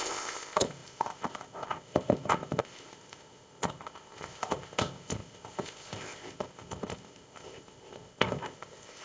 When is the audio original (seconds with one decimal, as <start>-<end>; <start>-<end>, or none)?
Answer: none